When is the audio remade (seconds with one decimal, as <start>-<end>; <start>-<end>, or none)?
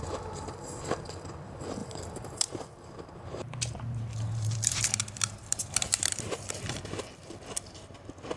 1.8-4.9; 5.8-7.0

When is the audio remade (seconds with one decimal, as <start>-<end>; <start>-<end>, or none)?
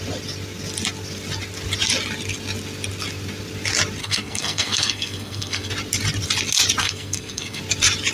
4.0-5.7; 6.8-7.6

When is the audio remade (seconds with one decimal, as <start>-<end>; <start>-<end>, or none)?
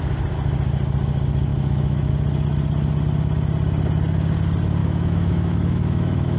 1.5-2.1; 4.8-6.4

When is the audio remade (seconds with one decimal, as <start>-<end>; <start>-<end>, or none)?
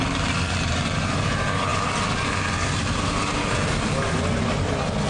none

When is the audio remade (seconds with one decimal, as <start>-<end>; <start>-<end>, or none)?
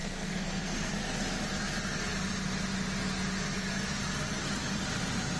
0.0-0.9